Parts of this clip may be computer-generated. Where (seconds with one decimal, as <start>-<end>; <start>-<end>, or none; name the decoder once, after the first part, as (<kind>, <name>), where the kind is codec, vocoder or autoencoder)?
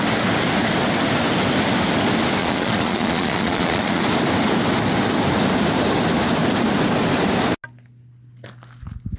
2.4-4.0 (vocoder, Vocos)